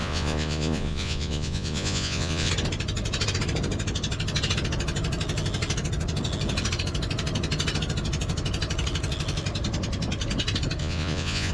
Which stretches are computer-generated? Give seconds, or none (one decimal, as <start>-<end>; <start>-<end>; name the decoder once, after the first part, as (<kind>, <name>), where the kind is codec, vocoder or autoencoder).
0.0-2.5 (vocoder, Vocos); 10.8-11.5